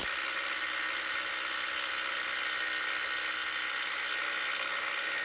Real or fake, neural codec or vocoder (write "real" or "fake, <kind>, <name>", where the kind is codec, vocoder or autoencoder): real